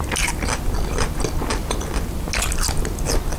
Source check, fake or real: real